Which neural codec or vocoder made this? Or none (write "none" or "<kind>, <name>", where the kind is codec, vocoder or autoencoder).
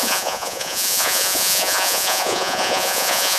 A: vocoder, Vocos